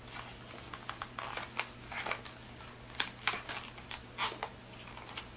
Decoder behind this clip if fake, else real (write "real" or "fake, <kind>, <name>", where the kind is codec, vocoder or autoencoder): real